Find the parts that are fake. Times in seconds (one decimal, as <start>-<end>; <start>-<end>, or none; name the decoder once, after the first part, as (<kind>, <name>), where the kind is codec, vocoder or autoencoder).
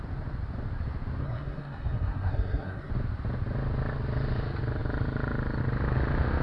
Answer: 1.2-2.9 (codec, SNAC)